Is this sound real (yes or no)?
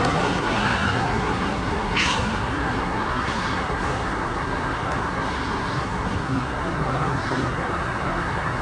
no